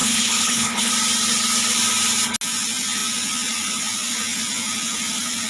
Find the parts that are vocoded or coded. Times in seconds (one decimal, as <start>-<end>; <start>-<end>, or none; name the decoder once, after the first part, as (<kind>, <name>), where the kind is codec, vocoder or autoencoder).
0.0-0.9 (codec, HILCodec)